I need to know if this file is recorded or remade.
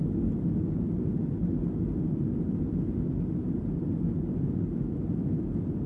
recorded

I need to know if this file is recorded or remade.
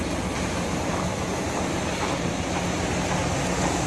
recorded